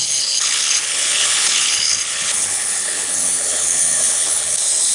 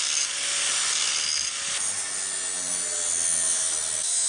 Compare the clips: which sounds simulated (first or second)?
first